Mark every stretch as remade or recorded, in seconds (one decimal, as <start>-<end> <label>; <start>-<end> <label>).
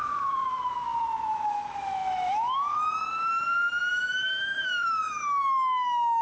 0.0-6.2 remade